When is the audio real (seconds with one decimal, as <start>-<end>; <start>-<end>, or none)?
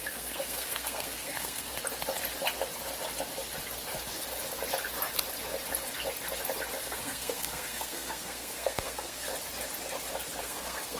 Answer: 1.7-6.8; 9.3-10.4